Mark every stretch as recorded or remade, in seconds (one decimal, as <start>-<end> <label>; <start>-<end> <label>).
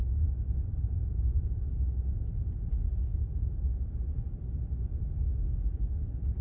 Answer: 0.0-1.0 recorded; 1.0-1.7 remade; 1.7-6.4 recorded